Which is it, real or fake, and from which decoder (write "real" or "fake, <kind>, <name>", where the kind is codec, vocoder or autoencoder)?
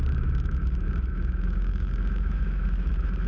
fake, autoencoder, DAC-VAE